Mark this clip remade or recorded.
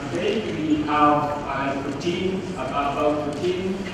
remade